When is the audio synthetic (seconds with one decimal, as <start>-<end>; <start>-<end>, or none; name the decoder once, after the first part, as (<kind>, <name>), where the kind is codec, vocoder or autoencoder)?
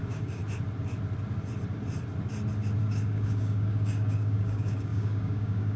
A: 0.0-0.4 (codec, DAC); 2.8-5.8